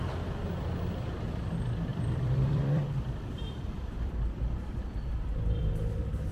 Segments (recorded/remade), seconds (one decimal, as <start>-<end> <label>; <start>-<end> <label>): 0.0-1.9 recorded; 1.9-5.7 remade; 5.7-6.3 recorded